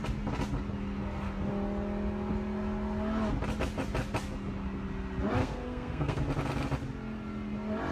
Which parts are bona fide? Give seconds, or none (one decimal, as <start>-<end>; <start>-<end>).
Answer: 0.0-5.4; 6.2-7.9

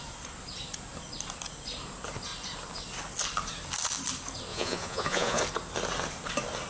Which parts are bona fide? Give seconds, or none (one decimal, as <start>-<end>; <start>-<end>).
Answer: 0.0-4.5; 5.4-6.7

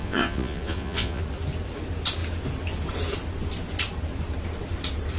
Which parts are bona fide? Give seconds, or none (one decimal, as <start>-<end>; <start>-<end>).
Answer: 1.2-5.2

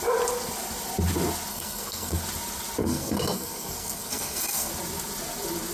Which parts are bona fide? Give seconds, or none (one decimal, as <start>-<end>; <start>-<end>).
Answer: 0.0-1.5; 2.2-2.8; 4.7-5.7